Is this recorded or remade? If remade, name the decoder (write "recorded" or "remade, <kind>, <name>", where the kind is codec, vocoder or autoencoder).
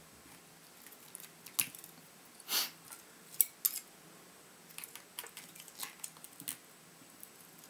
recorded